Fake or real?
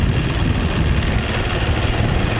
real